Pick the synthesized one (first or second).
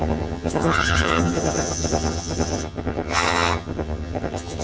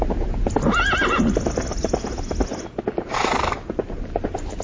first